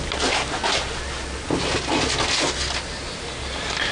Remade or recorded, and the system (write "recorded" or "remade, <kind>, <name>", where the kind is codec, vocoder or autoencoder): recorded